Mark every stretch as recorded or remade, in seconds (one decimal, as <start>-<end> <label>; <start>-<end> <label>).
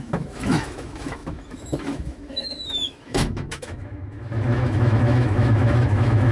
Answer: 0.0-6.3 remade